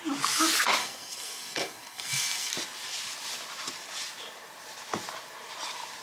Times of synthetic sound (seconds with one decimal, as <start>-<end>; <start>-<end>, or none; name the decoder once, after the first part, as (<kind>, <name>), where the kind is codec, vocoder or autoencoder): 0.8-2.5 (codec, SNAC)